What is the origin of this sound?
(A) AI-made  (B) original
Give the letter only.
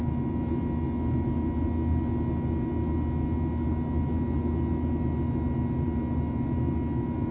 B